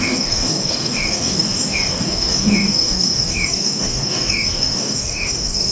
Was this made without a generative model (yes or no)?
no